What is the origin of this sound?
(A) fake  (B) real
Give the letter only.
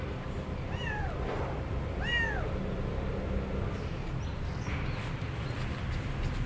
B